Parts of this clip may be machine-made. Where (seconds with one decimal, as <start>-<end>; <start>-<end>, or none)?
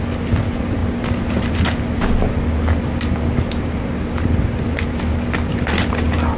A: none